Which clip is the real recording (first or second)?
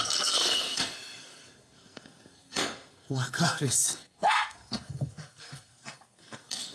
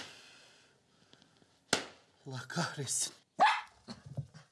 second